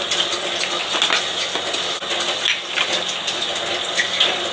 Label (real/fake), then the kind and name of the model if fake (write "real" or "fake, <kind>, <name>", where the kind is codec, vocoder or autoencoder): real